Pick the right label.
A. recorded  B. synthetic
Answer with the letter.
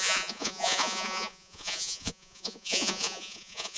B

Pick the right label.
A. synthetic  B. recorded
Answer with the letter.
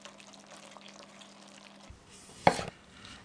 B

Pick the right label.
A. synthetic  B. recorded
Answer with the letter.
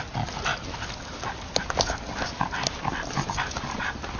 B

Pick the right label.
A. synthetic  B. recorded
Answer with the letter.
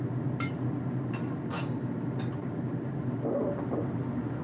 B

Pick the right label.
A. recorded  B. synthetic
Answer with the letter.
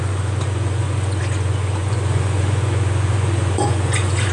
B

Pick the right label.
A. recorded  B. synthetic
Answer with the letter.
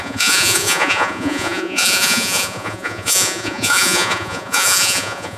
B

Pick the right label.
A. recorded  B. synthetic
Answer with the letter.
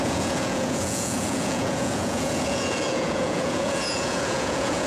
B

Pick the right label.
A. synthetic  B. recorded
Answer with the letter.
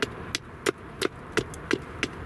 B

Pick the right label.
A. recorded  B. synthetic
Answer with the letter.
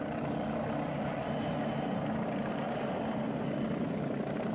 A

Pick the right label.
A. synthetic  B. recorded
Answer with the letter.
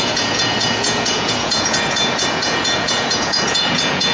A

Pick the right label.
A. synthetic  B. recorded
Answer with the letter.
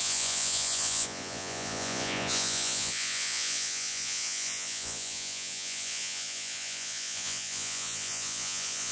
A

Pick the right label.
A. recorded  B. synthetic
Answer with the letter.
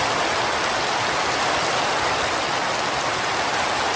A